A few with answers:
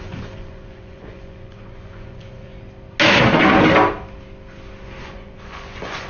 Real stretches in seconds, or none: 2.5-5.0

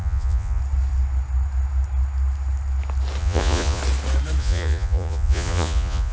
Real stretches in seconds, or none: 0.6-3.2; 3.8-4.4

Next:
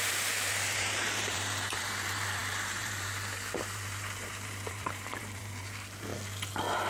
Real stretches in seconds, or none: 6.1-6.9